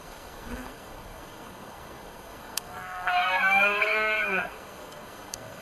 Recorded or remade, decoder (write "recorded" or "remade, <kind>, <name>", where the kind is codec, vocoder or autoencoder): remade, codec, SNAC